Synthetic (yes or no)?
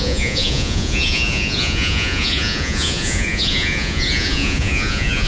yes